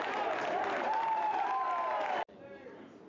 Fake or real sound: real